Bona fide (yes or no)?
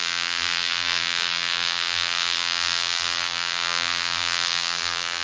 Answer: no